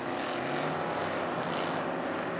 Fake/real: real